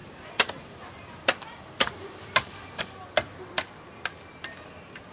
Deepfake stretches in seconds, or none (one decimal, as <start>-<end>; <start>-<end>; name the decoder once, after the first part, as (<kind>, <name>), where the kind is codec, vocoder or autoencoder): 0.0-2.8 (vocoder, BigVGAN v2)